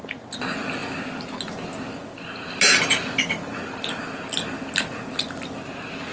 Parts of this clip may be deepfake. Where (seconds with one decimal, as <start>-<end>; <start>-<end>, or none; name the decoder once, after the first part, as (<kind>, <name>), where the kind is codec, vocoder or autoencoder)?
none